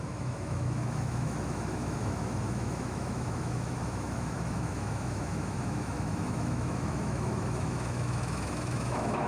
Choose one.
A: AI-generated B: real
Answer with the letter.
A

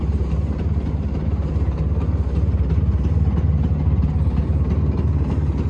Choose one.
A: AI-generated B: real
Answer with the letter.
B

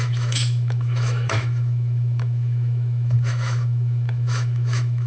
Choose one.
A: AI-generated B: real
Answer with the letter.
A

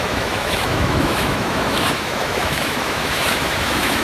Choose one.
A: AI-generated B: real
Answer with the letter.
A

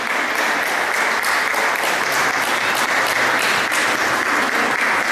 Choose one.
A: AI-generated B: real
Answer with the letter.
B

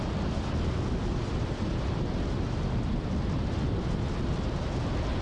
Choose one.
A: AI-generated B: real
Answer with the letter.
B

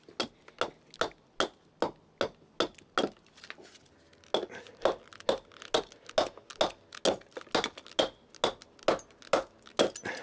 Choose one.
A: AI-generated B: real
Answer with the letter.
B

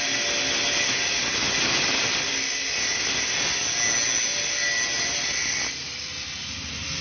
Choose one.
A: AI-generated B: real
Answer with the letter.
B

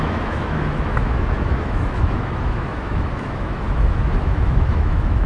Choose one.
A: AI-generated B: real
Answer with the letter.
A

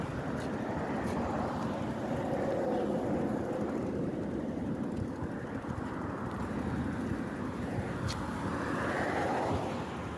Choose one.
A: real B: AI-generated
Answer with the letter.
A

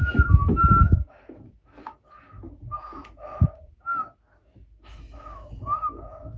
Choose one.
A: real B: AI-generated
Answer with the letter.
B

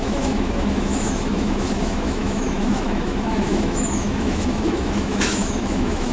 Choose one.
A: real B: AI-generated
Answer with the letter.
B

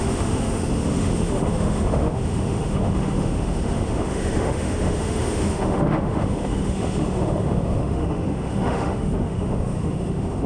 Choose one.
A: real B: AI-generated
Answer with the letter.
B